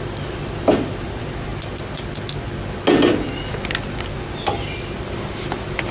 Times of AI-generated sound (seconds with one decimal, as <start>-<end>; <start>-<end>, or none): 0.0-1.5; 5.0-5.9